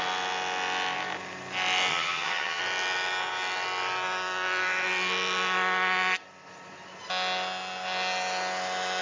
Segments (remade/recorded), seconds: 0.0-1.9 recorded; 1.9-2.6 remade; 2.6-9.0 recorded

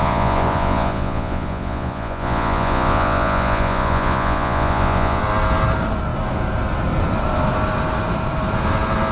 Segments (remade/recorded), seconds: 0.0-5.2 remade; 5.2-9.1 recorded

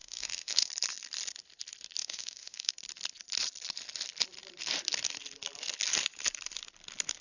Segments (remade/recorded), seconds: 0.0-0.7 remade; 0.7-2.0 recorded; 2.0-2.7 remade; 2.7-7.2 recorded

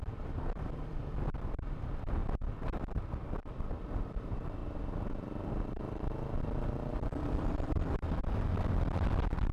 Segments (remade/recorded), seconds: 0.0-2.2 remade; 2.2-3.8 recorded; 3.8-9.5 remade

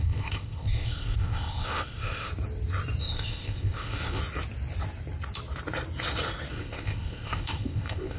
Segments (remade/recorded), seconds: 0.0-2.3 remade; 2.3-3.0 recorded; 3.0-4.2 remade; 4.2-6.5 recorded; 6.5-8.2 remade

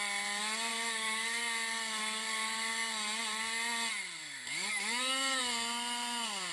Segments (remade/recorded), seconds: 0.0-0.7 recorded; 0.7-1.4 remade; 1.4-4.2 recorded; 4.2-5.4 remade; 5.4-6.5 recorded